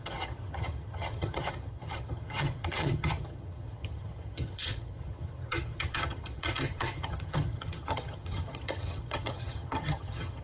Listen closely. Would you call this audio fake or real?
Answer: fake